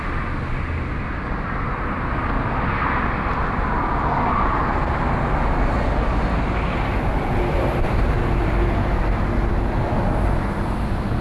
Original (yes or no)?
yes